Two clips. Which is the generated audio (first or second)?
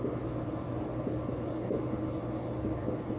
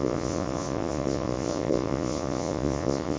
second